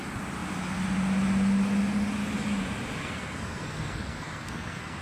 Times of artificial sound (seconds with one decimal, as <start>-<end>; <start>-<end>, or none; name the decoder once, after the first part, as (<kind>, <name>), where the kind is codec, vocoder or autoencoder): 3.0-5.0 (codec, SNAC)